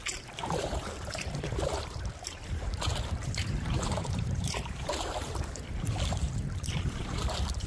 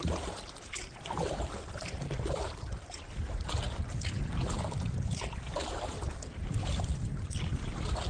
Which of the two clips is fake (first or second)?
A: first